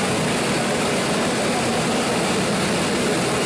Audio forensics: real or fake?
real